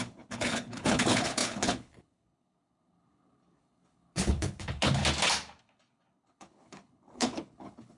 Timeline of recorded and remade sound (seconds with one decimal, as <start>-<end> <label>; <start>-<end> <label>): 0.0-5.0 remade; 5.0-5.6 recorded; 5.6-8.0 remade